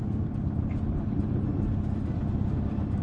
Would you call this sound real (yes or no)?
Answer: yes